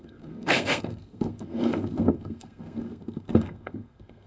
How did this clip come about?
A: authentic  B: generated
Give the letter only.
B